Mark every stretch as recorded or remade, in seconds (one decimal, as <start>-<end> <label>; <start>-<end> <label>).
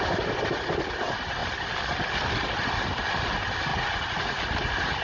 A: 0.0-3.7 recorded; 3.7-4.4 remade; 4.4-5.0 recorded